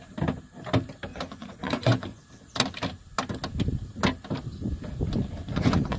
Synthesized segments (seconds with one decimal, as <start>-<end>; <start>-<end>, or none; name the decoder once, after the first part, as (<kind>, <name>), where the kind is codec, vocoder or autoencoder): 1.1-2.2 (vocoder, Vocos); 5.4-6.0